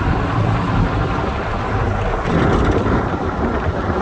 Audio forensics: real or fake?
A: real